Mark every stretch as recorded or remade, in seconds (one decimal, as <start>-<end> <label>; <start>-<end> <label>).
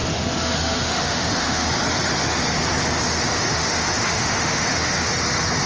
0.0-1.7 remade; 1.7-3.3 recorded; 3.3-5.1 remade; 5.1-5.7 recorded